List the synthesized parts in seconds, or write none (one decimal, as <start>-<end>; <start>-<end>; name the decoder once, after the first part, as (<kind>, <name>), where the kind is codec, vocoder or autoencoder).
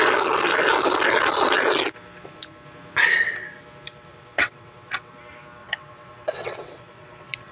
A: 4.1-5.1 (vocoder, WaveNeXt); 5.6-7.5